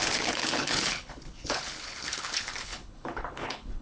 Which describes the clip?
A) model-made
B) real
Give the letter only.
A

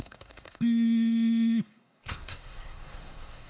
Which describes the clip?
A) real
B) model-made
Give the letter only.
B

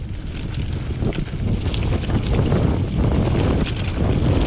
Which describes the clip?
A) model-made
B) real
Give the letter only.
B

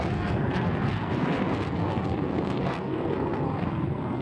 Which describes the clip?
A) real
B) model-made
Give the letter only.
B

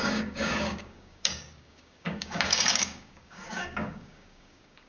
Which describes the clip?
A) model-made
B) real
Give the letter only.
A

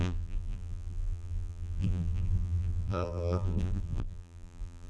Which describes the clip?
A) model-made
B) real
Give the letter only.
A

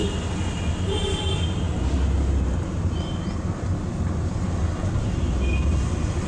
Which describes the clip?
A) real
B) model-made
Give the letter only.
A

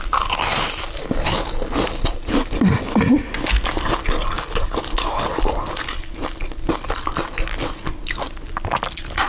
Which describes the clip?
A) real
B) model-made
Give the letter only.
A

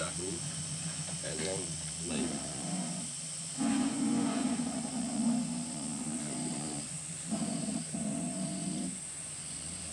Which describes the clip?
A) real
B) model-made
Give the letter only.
B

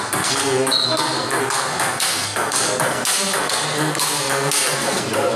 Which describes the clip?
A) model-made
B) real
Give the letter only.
A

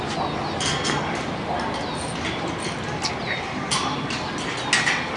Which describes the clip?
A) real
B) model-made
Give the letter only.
A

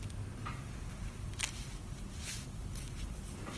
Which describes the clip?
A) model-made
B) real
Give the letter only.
B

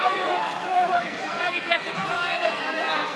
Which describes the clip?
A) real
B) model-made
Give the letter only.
B